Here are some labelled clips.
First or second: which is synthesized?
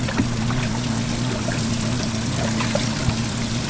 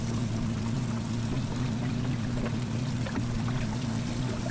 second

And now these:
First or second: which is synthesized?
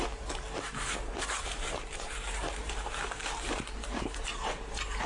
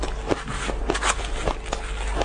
first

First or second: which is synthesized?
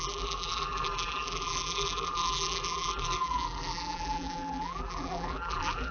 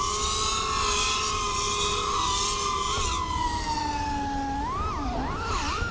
first